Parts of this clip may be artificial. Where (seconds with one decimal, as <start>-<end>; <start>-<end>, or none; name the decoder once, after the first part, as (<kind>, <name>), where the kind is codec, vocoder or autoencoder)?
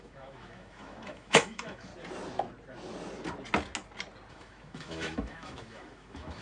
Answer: 0.0-1.9 (autoencoder, DAC-VAE); 4.3-6.4